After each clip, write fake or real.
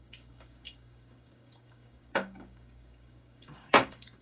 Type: fake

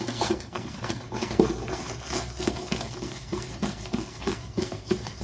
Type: fake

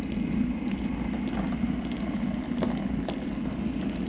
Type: real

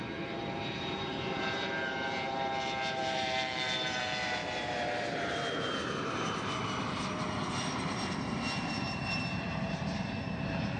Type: fake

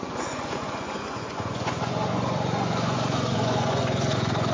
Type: fake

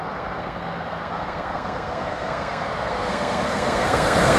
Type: fake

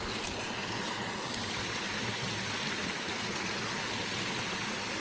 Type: real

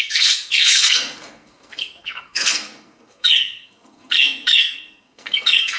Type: fake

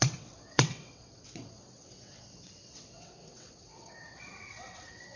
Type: fake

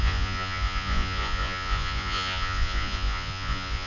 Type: fake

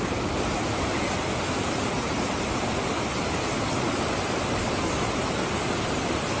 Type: real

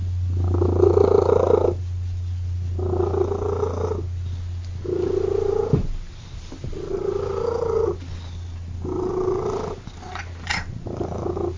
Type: real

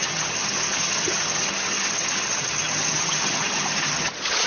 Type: fake